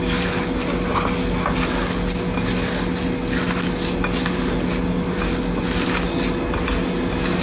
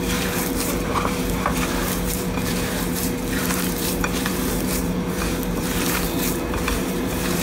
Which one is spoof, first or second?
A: second